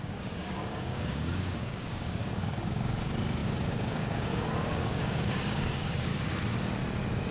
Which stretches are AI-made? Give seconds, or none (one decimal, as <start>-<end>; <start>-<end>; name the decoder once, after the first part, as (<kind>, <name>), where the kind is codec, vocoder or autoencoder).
0.0-6.1 (codec, DAC)